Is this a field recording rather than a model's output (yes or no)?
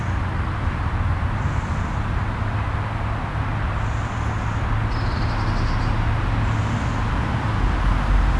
yes